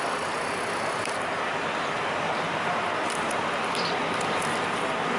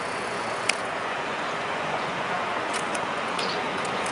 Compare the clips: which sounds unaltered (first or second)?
first